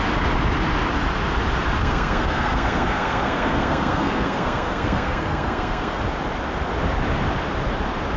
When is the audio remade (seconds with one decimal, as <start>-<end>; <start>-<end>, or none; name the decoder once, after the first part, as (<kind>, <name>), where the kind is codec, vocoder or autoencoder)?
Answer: 1.8-6.0 (codec, SNAC)